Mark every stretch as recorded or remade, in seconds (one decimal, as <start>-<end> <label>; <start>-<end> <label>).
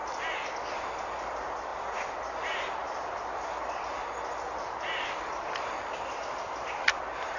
0.0-7.4 recorded